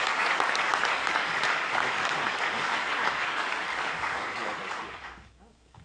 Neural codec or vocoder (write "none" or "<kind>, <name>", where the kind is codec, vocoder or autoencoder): codec, DAC